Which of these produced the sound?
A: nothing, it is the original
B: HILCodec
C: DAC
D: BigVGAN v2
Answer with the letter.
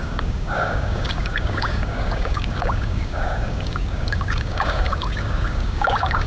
C